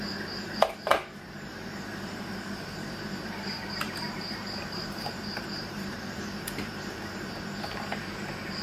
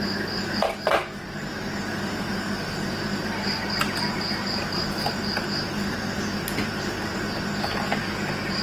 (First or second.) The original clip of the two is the second